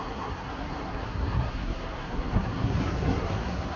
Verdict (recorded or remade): remade